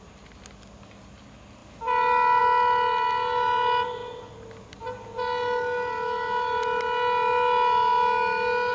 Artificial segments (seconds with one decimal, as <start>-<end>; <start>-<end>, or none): none